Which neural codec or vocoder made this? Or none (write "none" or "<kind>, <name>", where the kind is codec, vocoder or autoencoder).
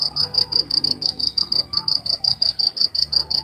codec, SNAC